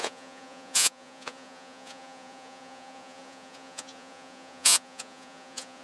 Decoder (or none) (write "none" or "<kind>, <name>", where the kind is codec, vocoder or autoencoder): vocoder, Vocos